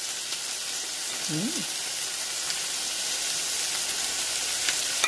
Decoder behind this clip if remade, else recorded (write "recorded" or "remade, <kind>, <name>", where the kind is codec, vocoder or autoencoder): recorded